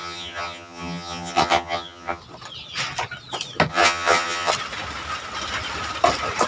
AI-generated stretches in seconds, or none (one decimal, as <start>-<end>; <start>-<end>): 0.0-2.2; 3.7-4.5